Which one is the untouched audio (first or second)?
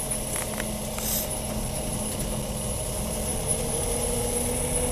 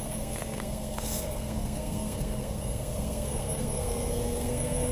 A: first